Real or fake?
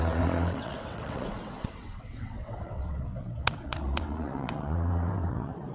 fake